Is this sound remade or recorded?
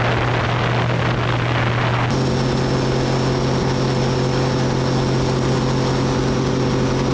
recorded